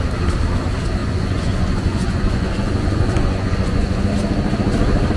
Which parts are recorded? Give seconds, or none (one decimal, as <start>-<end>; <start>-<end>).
0.0-1.0; 4.1-5.2